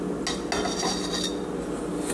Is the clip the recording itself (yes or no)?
yes